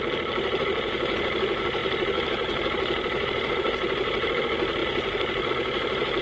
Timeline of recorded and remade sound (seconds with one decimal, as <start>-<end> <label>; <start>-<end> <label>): 0.0-1.8 recorded; 1.8-3.5 remade; 3.5-4.8 recorded; 4.8-5.5 remade; 5.5-6.2 recorded